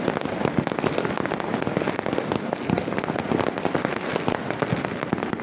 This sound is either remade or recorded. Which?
recorded